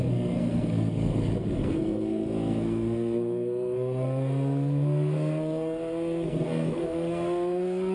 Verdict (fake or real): fake